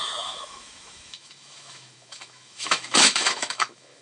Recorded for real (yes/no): no